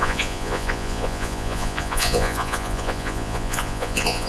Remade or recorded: remade